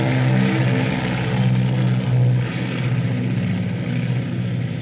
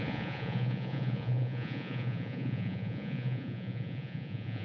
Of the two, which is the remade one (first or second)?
second